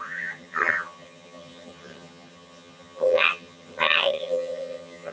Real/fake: fake